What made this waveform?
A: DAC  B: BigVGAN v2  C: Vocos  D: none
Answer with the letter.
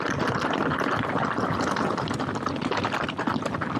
D